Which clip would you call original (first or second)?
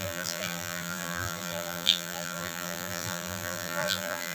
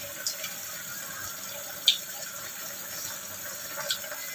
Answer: second